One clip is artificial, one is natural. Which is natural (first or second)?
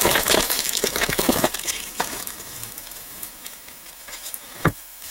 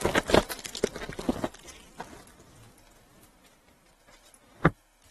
second